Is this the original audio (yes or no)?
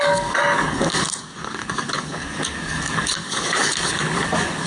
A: no